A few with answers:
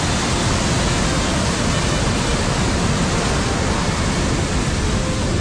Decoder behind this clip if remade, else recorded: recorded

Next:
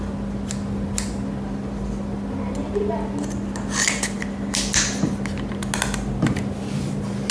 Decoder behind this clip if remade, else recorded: recorded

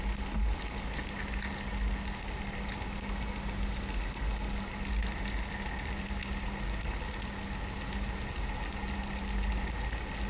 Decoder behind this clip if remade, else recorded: recorded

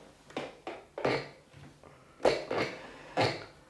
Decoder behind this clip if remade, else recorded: recorded